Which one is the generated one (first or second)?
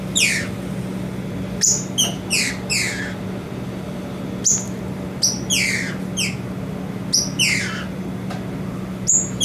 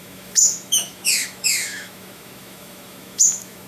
second